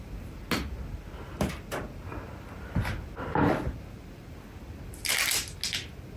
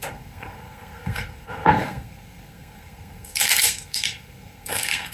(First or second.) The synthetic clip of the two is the second